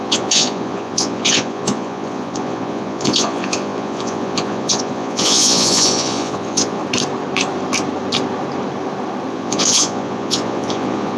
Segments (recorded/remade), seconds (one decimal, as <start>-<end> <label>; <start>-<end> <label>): 0.0-6.8 remade; 6.8-9.3 recorded; 9.3-11.2 remade